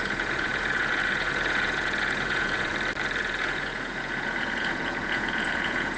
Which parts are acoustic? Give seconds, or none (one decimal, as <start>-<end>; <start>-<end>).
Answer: 2.7-3.2